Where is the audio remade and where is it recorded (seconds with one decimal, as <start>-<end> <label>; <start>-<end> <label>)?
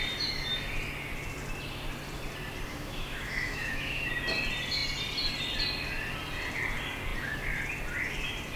0.0-2.7 recorded; 2.7-4.1 remade; 4.1-8.6 recorded